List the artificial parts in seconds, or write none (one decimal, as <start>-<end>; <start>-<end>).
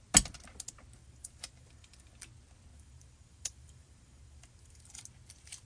1.0-2.1; 2.7-5.0